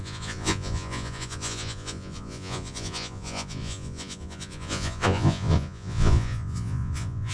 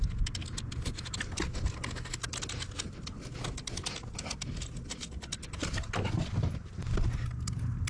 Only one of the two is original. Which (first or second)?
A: second